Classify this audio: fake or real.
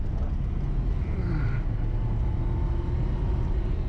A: real